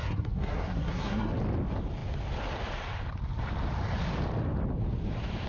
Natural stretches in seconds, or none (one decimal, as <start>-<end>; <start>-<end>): 1.3-5.5